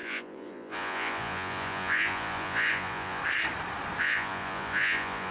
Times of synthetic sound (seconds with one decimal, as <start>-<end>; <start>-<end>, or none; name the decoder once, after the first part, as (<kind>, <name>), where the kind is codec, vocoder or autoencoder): 0.0-3.2 (vocoder, Vocos); 4.0-5.3